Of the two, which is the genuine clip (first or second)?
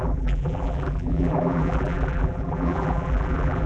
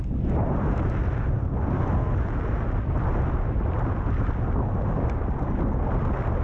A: second